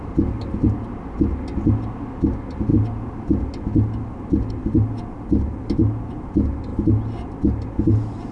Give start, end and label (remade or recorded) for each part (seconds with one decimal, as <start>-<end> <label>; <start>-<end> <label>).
0.0-8.3 recorded